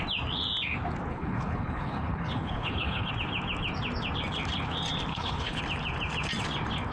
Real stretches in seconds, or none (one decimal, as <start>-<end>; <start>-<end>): 0.0-1.1; 3.1-5.1; 5.6-6.9